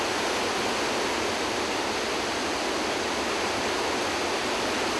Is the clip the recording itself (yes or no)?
yes